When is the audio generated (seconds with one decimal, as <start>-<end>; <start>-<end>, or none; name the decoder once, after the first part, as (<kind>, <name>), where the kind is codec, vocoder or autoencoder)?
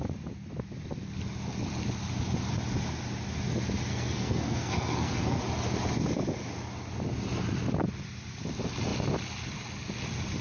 3.9-5.4 (codec, SNAC)